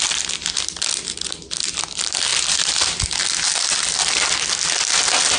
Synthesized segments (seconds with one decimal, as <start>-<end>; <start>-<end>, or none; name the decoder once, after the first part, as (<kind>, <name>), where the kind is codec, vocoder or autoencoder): none